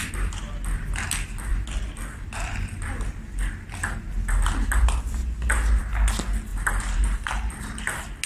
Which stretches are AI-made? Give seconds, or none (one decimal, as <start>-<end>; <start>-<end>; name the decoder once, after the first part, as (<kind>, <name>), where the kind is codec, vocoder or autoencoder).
6.5-7.8 (vocoder, BigVGAN v2)